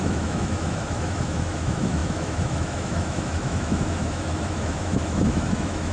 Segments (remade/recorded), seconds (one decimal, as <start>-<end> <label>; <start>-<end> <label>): 0.0-5.9 remade